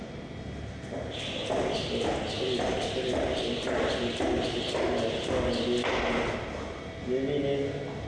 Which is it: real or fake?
real